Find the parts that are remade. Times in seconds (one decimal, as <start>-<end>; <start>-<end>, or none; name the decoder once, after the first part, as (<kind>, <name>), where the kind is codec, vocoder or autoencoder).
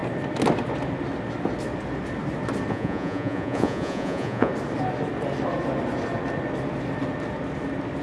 2.7-4.5 (vocoder, Vocos)